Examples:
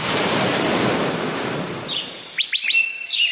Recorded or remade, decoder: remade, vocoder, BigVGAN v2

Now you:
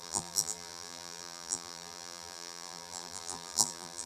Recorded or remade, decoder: remade, vocoder, BigVGAN v2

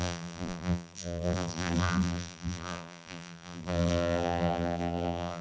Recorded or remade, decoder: remade, vocoder, BigVGAN v2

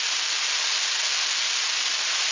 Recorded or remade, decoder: recorded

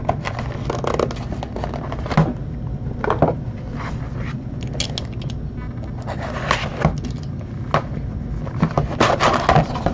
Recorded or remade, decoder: recorded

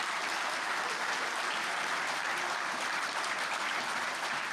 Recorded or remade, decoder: remade, vocoder, BigVGAN v2